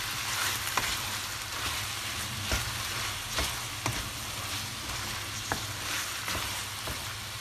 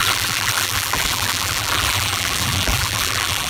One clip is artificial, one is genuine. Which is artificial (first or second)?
second